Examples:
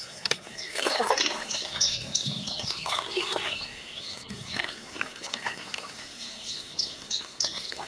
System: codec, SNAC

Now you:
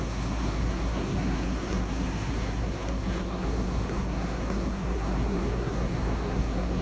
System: codec, SNAC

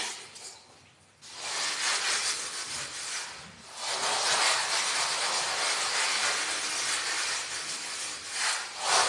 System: none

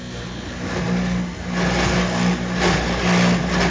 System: none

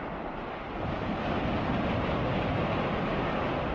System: none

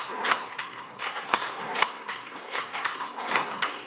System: codec, SNAC